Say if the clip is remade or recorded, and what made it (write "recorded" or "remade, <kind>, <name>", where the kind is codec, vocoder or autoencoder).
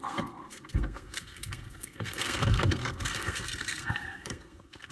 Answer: remade, codec, SNAC